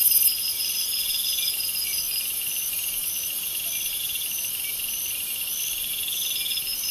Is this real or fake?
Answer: real